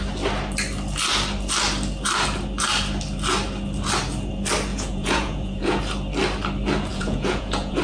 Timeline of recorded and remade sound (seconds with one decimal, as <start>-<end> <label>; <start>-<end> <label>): 0.0-4.7 recorded; 4.7-5.8 remade; 5.8-6.9 recorded; 6.9-7.8 remade